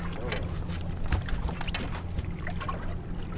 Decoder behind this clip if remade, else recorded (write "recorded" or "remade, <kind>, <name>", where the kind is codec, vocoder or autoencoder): recorded